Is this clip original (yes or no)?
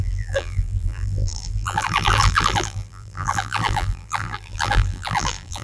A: no